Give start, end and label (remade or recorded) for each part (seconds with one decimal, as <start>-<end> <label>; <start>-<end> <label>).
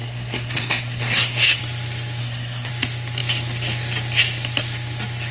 0.0-1.6 remade; 1.6-2.2 recorded; 2.2-2.7 remade; 2.7-5.3 recorded